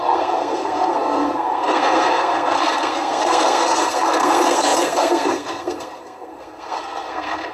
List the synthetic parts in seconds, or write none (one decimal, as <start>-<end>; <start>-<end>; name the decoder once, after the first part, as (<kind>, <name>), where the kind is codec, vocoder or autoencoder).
0.0-7.5 (codec, SNAC)